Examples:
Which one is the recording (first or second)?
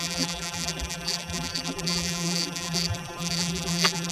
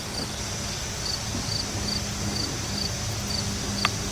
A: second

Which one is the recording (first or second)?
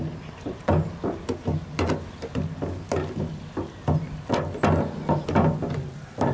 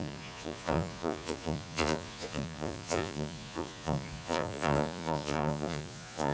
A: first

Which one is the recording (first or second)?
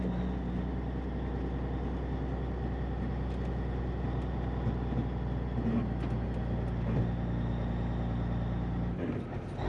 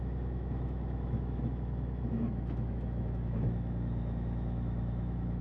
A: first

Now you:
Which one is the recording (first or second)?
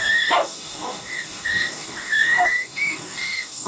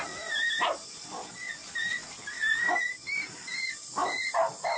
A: second